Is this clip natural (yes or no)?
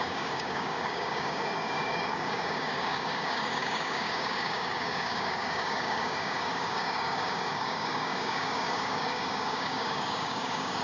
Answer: no